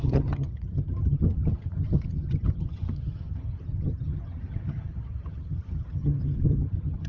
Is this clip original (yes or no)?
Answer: no